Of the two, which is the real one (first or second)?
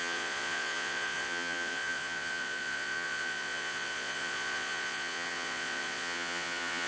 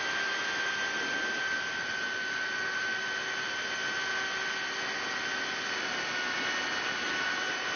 second